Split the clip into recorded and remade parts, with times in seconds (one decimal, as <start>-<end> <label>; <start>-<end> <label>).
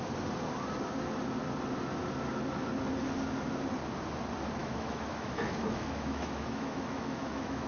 0.0-4.6 recorded; 4.6-7.7 remade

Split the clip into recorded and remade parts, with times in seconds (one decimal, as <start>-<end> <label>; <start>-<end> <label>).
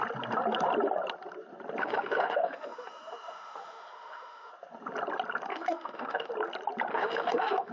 0.0-1.8 recorded; 1.8-4.5 remade; 4.5-5.5 recorded; 5.5-6.3 remade; 6.3-6.9 recorded; 6.9-7.7 remade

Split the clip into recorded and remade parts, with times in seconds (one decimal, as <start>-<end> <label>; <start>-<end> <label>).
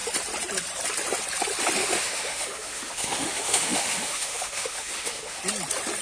0.0-1.8 recorded; 1.8-5.4 remade; 5.4-6.0 recorded